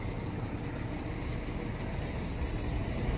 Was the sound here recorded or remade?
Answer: recorded